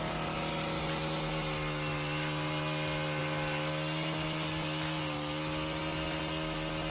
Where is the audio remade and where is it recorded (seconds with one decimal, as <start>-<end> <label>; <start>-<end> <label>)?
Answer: 0.0-6.9 recorded